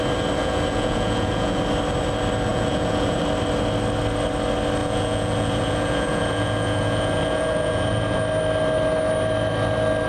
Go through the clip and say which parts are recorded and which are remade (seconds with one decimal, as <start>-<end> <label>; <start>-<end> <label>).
0.0-0.4 recorded; 0.4-1.6 remade; 1.6-2.5 recorded; 2.5-3.2 remade; 3.2-4.8 recorded; 4.8-8.2 remade; 8.2-10.1 recorded